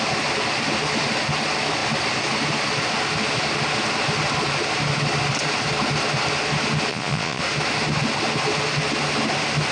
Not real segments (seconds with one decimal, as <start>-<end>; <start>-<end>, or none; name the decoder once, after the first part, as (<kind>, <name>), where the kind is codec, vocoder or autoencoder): 6.9-7.4 (vocoder, Vocos)